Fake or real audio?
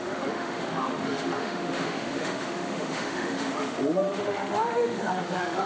fake